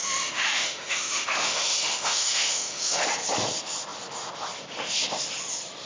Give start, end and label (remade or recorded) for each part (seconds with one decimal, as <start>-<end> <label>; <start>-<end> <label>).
0.0-3.0 remade; 3.0-5.9 recorded